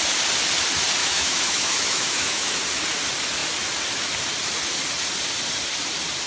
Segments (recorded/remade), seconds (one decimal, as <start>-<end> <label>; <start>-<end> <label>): 0.0-1.0 recorded; 1.0-2.6 remade; 2.6-6.3 recorded